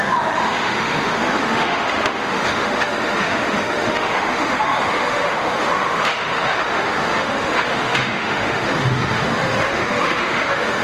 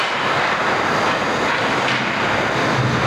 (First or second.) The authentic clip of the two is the second